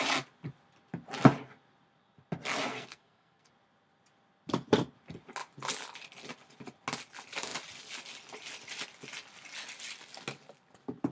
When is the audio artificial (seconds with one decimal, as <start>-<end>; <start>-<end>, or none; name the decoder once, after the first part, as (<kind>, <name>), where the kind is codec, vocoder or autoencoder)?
2.7-3.5 (codec, SNAC)